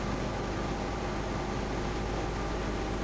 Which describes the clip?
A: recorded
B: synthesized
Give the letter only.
A